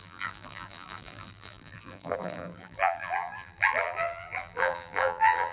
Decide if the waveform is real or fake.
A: fake